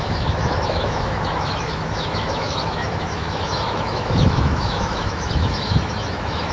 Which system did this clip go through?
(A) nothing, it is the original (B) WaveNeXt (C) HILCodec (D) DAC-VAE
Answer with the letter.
D